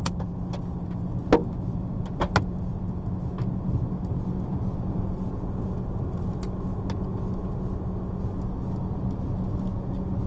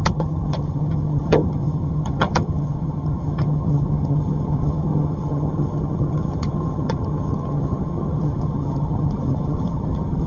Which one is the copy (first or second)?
second